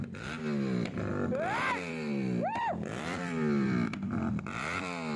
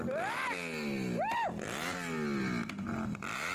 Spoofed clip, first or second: first